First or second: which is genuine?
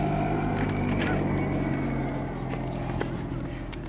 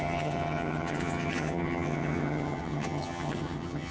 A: first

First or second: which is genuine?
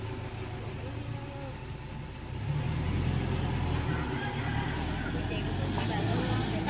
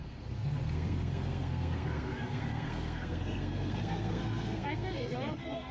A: first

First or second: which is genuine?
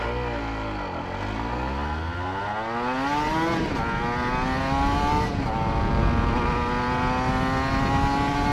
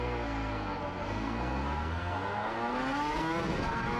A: first